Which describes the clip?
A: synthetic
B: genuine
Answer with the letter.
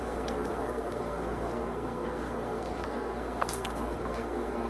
A